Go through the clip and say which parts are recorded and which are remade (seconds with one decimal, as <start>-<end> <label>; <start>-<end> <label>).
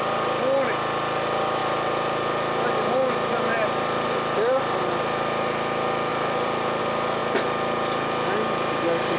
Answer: 0.0-1.6 recorded; 1.6-4.8 remade; 4.8-6.1 recorded; 6.1-6.8 remade; 6.8-9.2 recorded